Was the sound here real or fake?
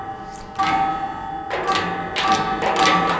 real